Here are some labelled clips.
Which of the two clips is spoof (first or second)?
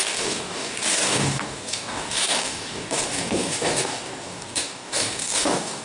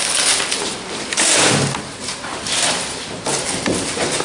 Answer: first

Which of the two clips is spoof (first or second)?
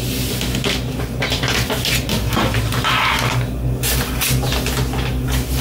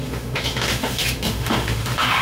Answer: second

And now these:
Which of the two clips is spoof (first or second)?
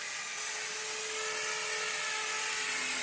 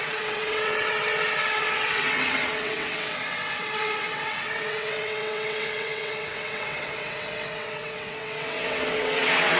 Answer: second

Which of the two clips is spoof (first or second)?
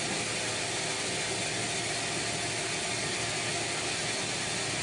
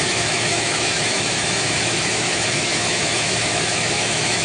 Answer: second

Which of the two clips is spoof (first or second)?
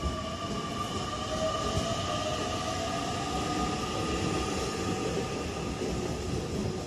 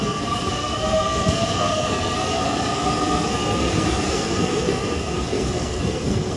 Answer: second